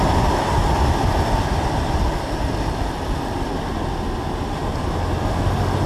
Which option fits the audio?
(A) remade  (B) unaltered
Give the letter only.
B